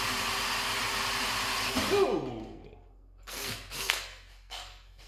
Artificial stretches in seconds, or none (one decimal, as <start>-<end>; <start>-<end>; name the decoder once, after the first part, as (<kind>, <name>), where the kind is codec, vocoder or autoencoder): 2.4-5.1 (codec, SNAC)